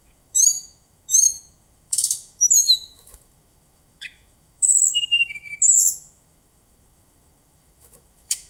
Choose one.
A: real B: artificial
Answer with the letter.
B